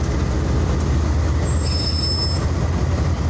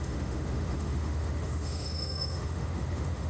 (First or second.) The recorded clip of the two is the first